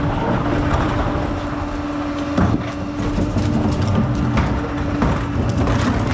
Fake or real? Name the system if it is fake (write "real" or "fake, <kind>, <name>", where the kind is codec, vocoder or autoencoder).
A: real